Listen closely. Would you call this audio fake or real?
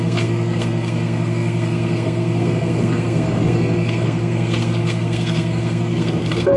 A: fake